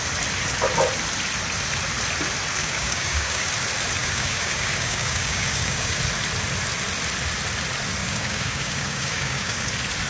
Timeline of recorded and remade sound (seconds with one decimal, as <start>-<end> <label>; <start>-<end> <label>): 0.0-2.6 recorded; 2.6-3.5 remade; 3.5-4.0 recorded; 4.0-6.0 remade; 6.0-8.0 recorded; 8.0-9.7 remade; 9.7-10.1 recorded